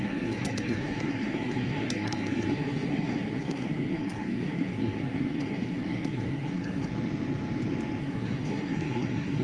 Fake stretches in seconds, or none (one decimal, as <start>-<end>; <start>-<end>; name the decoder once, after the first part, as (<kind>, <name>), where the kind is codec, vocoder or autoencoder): 0.0-6.9 (codec, SNAC); 8.0-9.4